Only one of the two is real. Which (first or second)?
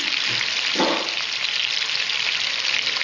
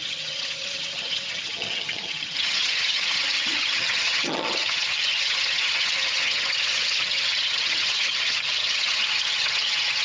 first